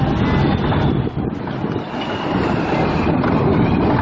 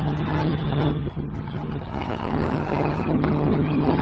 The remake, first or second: second